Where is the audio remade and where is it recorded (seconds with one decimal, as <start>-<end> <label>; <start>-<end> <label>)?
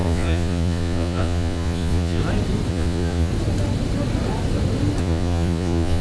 0.0-2.2 remade; 2.2-2.7 recorded; 2.7-3.3 remade; 3.3-5.0 recorded; 5.0-6.0 remade